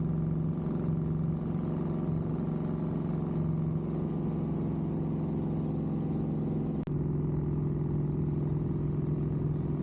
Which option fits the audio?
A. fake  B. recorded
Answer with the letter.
B